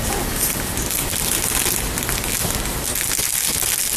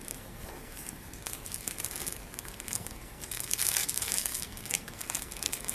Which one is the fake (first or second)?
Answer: second